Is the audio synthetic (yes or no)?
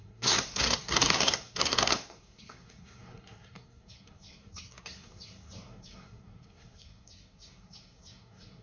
yes